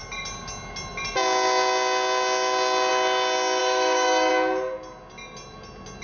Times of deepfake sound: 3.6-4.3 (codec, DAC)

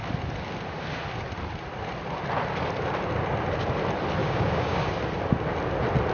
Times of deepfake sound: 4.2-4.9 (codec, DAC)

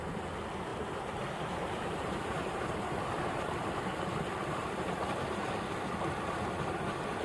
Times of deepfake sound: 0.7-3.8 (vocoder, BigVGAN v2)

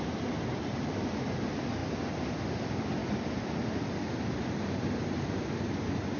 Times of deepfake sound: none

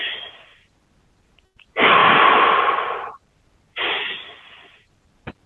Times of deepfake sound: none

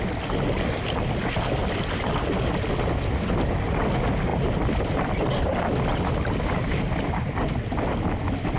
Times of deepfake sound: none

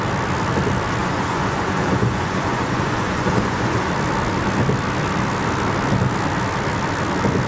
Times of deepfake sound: 1.0-3.9 (vocoder, Vocos)

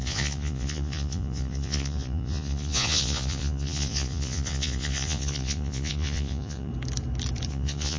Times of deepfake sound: 0.0-6.7 (vocoder, Vocos); 7.5-8.0